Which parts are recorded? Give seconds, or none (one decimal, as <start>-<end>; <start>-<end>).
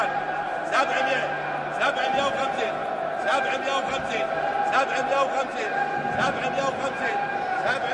0.0-7.9